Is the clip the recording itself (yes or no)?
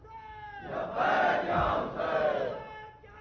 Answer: yes